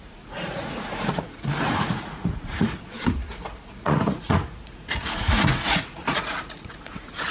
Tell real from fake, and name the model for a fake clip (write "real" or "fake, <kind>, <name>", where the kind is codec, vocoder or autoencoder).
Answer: fake, vocoder, Vocos